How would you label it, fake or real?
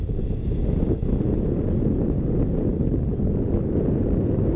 real